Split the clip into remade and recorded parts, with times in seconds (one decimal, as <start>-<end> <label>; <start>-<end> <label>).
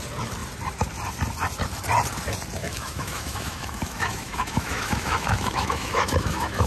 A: 0.0-2.6 recorded; 2.6-6.7 remade